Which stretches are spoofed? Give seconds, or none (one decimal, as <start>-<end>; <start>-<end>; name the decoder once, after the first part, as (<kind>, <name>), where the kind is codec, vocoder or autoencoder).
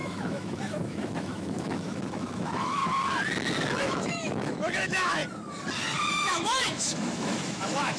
0.0-2.8 (autoencoder, DAC-VAE); 3.8-5.2; 6.1-8.0